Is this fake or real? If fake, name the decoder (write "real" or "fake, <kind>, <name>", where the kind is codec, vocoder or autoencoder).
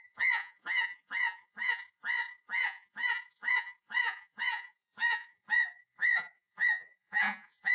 fake, vocoder, Vocos